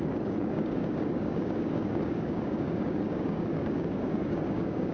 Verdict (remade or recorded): remade